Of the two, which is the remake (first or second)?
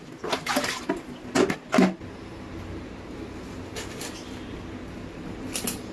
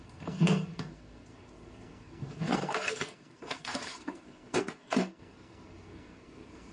second